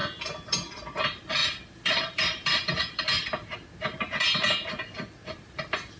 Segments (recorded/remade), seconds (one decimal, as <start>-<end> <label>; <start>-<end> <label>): 0.0-6.0 recorded